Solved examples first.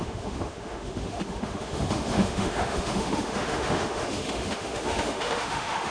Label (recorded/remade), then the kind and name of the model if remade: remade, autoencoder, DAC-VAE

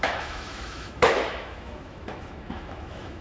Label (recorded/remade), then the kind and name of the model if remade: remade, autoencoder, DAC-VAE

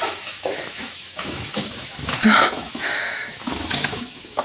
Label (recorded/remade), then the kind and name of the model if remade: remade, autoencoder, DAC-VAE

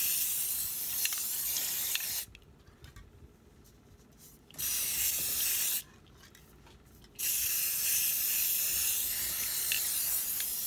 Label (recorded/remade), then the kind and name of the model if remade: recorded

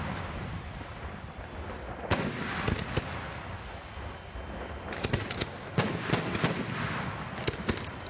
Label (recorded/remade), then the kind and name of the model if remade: recorded